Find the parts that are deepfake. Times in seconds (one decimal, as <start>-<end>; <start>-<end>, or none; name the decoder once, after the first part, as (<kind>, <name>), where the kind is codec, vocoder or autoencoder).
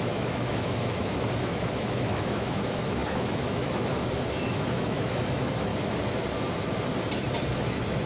0.0-5.7 (autoencoder, DAC-VAE); 7.5-8.1